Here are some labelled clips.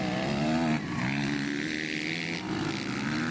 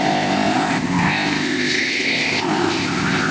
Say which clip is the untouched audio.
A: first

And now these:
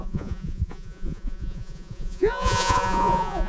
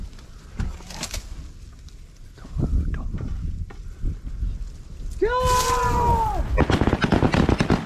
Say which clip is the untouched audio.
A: second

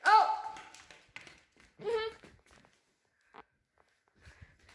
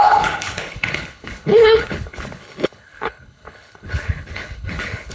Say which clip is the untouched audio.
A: first